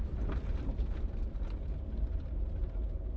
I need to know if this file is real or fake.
real